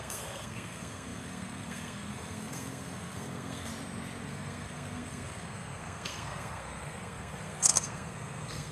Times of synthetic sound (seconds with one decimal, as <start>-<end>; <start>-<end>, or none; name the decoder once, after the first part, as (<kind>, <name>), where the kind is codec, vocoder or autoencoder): 0.0-3.7 (codec, SNAC); 4.2-8.7